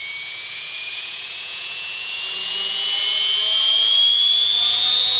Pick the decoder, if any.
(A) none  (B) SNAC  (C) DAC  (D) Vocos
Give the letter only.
D